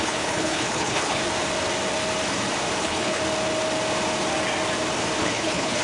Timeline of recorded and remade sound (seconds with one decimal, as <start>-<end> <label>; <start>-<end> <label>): 0.0-1.2 remade; 1.2-2.8 recorded; 2.8-3.2 remade; 3.2-5.2 recorded; 5.2-5.8 remade